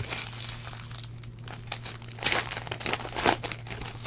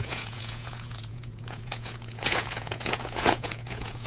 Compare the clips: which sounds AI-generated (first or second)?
second